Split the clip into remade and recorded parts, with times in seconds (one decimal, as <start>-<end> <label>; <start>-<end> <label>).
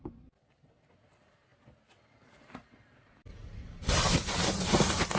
0.0-5.2 recorded